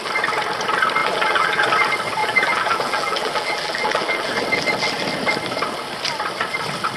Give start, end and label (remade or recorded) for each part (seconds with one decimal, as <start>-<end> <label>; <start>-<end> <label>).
0.0-1.0 recorded; 1.0-1.6 remade; 1.6-2.2 recorded; 2.2-4.3 remade; 4.3-7.0 recorded